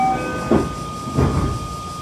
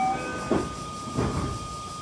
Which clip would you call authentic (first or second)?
first